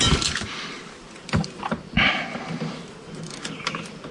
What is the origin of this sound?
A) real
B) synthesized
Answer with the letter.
A